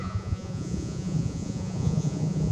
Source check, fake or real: fake